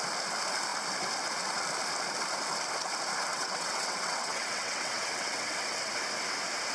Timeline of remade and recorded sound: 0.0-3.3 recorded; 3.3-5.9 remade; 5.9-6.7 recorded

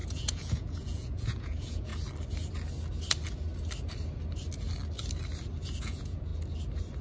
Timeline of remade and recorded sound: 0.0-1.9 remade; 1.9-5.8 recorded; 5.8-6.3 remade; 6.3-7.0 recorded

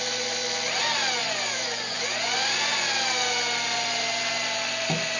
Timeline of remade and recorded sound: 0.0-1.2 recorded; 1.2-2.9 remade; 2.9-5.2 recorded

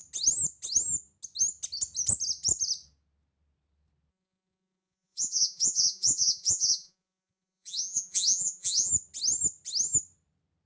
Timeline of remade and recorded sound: 0.0-4.1 recorded; 4.1-8.9 remade; 8.9-10.7 recorded

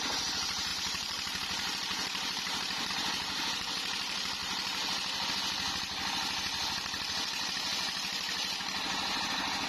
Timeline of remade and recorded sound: 0.0-9.7 recorded

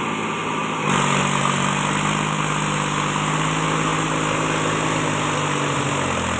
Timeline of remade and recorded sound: 0.0-6.4 recorded

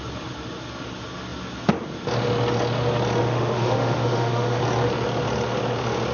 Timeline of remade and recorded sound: 0.0-3.2 recorded; 3.2-4.6 remade; 4.6-6.1 recorded

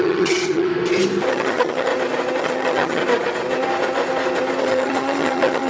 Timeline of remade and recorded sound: 0.0-0.7 remade; 0.7-1.3 recorded; 1.3-1.9 remade; 1.9-2.4 recorded; 2.4-3.0 remade; 3.0-4.6 recorded; 4.6-5.7 remade